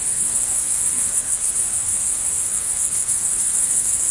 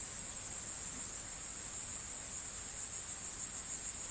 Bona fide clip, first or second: second